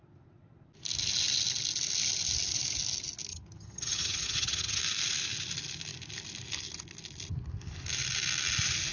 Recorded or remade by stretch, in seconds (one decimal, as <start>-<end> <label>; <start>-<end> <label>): 0.0-3.3 recorded; 3.3-4.8 remade; 4.8-8.9 recorded